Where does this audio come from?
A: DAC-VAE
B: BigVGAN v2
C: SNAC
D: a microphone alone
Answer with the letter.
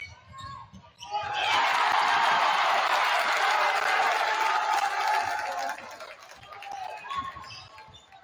D